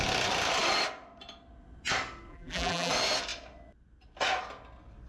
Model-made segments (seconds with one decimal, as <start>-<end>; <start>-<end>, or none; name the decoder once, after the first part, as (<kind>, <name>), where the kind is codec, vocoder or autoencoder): 2.3-2.9 (vocoder, BigVGAN v2)